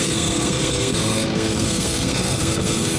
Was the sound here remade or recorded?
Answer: remade